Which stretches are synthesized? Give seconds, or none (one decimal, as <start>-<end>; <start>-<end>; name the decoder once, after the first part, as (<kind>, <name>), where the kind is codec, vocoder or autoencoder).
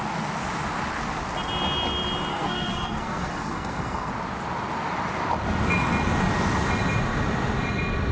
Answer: 2.3-4.1 (codec, SNAC)